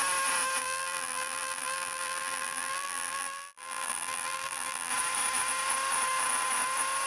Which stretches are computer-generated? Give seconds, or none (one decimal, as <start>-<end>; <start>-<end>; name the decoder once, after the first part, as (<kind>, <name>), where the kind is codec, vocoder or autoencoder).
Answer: 0.6-4.9 (vocoder, BigVGAN v2)